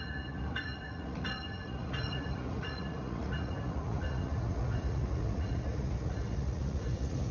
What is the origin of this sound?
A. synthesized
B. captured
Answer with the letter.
A